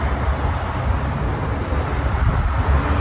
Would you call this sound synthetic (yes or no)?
no